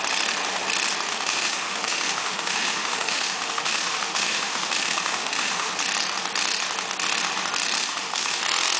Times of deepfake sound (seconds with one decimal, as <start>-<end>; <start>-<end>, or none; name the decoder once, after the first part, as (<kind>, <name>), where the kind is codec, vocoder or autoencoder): 1.1-5.7 (autoencoder, DAC-VAE); 7.8-8.4